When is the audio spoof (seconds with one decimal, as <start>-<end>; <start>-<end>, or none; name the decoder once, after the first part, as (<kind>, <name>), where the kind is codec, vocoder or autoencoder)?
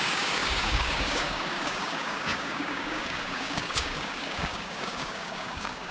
0.0-5.9 (codec, DAC)